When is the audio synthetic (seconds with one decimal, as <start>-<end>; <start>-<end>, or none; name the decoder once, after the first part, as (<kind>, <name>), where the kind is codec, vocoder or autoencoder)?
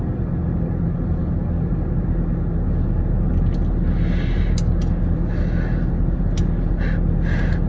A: none